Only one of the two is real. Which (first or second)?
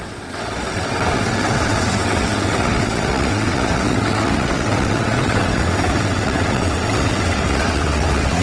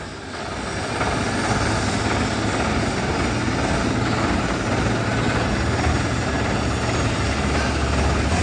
second